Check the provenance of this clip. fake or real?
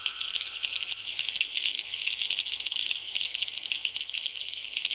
fake